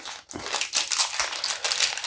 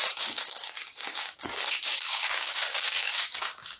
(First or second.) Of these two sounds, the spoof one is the second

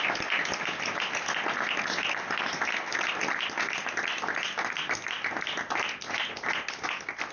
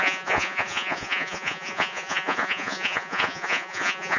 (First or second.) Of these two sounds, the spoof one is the second